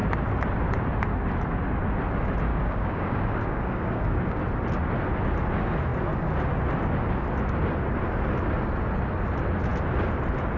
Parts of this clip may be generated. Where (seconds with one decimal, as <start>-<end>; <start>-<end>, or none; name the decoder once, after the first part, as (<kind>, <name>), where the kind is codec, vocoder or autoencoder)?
2.5-4.4 (codec, DAC)